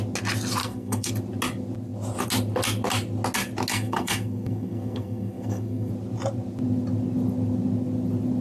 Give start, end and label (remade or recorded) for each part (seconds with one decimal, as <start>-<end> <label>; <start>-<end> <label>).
0.0-0.6 recorded; 0.6-1.1 remade; 1.1-3.7 recorded; 3.7-5.9 remade; 5.9-8.4 recorded